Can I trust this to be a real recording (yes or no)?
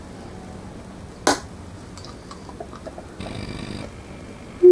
yes